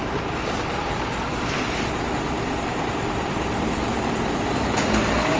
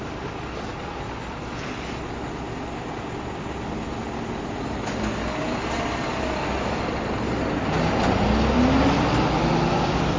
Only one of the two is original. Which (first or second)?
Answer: second